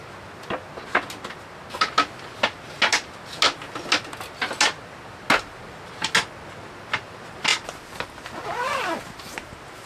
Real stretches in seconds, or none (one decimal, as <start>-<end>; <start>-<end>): 0.0-9.9